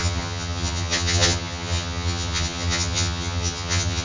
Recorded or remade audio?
remade